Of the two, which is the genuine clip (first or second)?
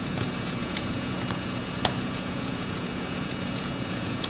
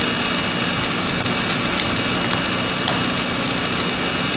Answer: second